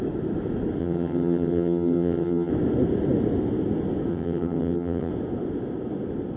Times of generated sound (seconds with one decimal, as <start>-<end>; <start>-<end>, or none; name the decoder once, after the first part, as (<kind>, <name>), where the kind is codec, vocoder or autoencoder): 0.8-2.5 (vocoder, HiFi-GAN); 4.1-5.1